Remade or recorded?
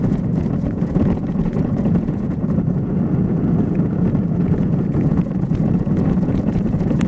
remade